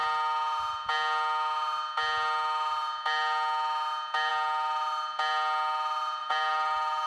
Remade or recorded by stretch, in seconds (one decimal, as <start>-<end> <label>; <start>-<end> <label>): 0.0-6.2 recorded; 6.2-7.1 remade